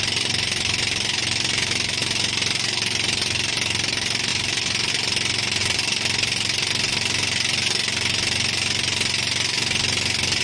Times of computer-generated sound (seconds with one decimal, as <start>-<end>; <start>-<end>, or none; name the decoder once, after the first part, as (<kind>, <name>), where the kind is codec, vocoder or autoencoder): 4.3-4.9 (vocoder, BigVGAN v2); 5.6-6.7